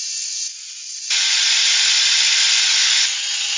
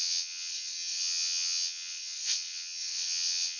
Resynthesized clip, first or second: second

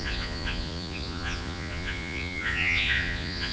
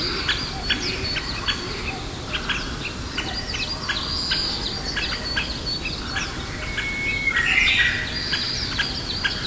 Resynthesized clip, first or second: first